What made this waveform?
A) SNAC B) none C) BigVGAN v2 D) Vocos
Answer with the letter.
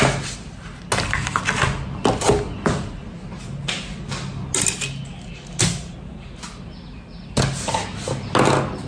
B